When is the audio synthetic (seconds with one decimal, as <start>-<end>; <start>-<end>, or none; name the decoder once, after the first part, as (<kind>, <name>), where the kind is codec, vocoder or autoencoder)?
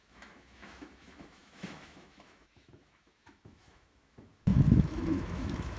0.0-5.8 (autoencoder, DAC-VAE)